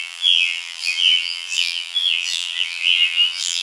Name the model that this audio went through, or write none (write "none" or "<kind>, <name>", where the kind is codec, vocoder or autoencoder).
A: vocoder, BigVGAN v2